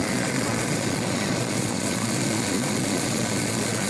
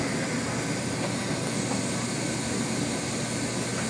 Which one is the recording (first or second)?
second